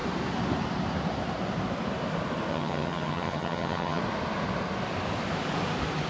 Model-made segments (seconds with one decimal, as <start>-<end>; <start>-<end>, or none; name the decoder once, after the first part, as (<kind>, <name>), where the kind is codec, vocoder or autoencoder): 2.5-4.0 (vocoder, HiFi-GAN)

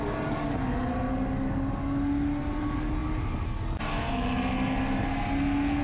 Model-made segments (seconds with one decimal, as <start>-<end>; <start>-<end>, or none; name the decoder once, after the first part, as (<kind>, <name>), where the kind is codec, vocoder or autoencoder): none

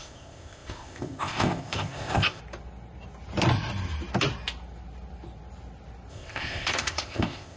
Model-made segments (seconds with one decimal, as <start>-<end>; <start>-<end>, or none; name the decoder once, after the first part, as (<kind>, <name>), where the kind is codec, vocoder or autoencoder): 0.0-2.4 (codec, ZipCodec); 6.1-7.6

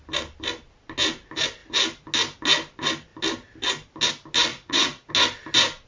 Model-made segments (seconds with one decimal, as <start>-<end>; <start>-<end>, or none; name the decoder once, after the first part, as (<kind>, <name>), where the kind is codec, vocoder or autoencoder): 4.5-5.1 (vocoder, Vocos)

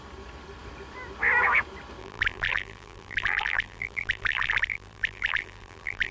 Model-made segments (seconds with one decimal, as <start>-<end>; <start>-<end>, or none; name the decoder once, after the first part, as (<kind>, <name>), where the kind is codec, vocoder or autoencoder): 2.0-6.1 (vocoder, BigVGAN v2)

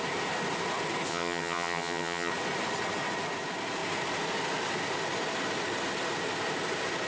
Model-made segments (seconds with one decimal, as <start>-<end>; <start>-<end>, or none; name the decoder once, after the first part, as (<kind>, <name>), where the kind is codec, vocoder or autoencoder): 1.1-2.3 (vocoder, HiFi-GAN)

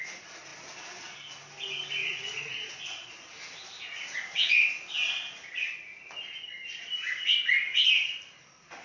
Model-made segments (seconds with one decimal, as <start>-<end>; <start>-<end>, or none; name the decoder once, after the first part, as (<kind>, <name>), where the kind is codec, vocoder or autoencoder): 2.0-3.2 (vocoder, Vocos)